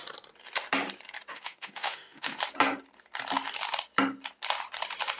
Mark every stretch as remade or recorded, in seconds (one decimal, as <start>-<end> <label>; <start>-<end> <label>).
0.0-1.3 recorded; 1.3-2.4 remade; 2.4-5.2 recorded